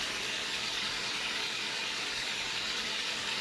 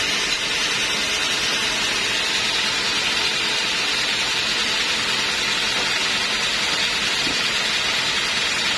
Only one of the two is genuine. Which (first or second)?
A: second